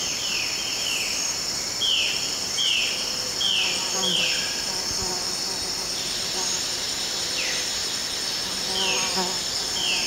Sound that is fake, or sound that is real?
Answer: real